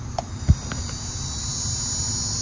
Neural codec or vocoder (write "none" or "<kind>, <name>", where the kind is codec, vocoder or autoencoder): none